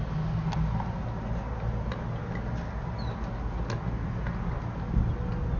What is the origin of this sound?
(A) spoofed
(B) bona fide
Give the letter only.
B